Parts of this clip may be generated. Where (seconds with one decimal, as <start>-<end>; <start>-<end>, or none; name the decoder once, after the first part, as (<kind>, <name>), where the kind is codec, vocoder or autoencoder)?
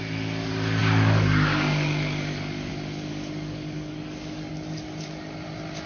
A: 0.8-2.7 (codec, DAC); 3.1-4.5